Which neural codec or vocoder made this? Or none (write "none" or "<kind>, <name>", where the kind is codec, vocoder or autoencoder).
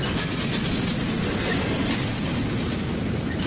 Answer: none